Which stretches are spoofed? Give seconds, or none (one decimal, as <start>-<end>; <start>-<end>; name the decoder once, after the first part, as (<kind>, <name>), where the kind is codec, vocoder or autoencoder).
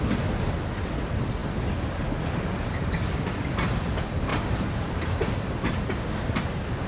4.3-5.4 (vocoder, BigVGAN v2)